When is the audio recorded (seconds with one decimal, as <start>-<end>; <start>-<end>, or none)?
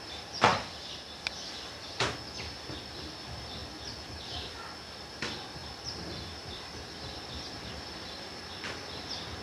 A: 0.0-0.5; 1.2-5.6; 8.5-9.4